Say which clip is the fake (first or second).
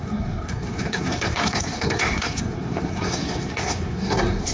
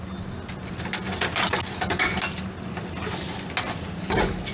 first